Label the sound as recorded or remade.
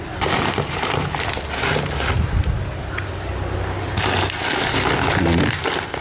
recorded